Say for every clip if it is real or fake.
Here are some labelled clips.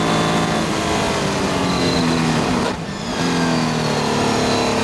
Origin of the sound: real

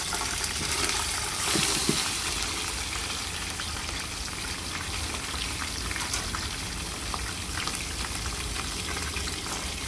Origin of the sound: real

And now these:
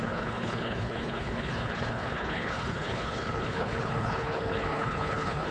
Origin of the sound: fake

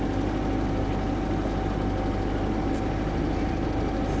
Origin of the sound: real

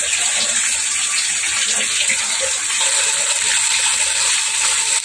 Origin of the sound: real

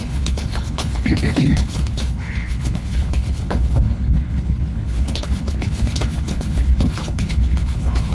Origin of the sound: fake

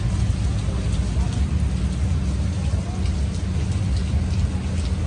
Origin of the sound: real